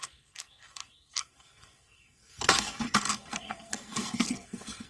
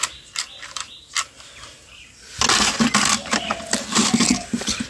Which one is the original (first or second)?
second